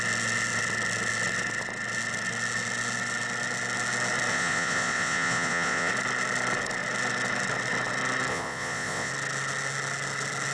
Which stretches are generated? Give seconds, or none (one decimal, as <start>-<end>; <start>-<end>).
4.3-5.9; 8.3-9.1